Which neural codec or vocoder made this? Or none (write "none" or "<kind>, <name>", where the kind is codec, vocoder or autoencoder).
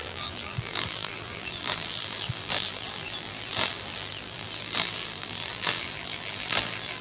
vocoder, BigVGAN v2